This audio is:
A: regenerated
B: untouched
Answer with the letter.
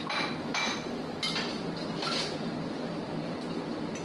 B